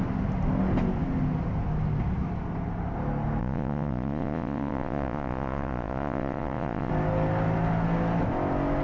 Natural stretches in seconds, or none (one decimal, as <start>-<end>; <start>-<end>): 0.0-3.4; 6.9-8.8